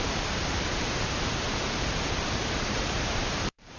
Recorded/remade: remade